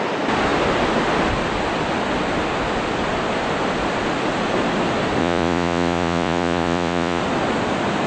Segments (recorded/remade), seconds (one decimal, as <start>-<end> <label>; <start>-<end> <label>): 0.0-5.2 recorded; 5.2-7.2 remade; 7.2-8.1 recorded